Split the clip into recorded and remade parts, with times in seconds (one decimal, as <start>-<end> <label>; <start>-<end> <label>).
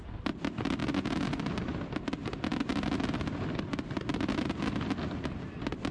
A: 0.0-5.9 recorded